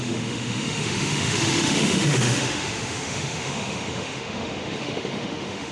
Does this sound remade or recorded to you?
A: remade